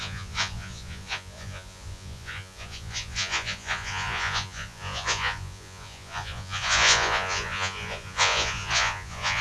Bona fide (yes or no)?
no